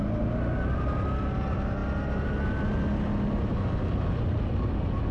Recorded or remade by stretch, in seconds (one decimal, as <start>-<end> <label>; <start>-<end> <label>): 0.0-5.1 recorded